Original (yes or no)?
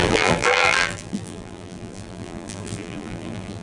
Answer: no